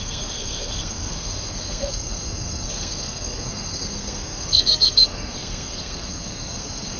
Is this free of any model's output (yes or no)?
no